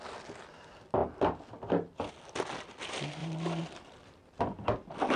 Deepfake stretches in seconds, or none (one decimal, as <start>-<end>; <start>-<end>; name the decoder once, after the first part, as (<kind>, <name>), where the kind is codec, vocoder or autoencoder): 3.2-4.4 (vocoder, BigVGAN v2)